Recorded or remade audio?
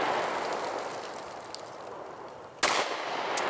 recorded